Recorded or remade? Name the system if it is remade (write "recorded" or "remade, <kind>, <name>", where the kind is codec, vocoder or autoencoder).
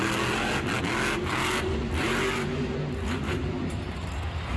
recorded